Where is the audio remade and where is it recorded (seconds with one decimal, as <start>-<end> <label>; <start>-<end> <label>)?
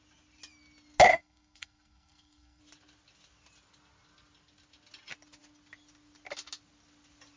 0.0-1.1 recorded; 1.1-2.6 remade; 2.6-7.4 recorded